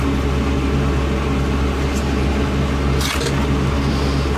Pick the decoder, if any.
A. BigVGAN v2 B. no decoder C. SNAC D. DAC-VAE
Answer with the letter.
B